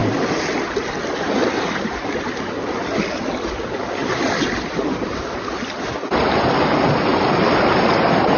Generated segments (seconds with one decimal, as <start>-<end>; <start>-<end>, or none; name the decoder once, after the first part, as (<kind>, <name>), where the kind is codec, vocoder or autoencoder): 0.0-3.6 (vocoder, BigVGAN v2); 4.0-5.2; 7.1-7.7